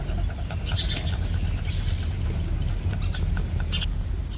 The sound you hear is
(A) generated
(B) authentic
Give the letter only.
B